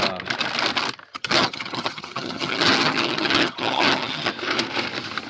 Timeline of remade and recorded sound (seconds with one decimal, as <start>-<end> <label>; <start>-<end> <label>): 0.0-1.1 recorded; 1.1-4.3 remade; 4.3-5.3 recorded